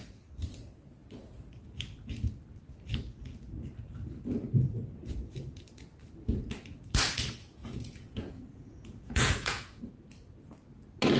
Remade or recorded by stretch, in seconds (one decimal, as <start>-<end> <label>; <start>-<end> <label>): 0.0-7.6 recorded; 7.6-9.8 remade; 9.8-11.2 recorded